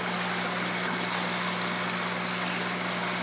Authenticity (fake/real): real